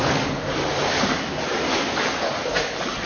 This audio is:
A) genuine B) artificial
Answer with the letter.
A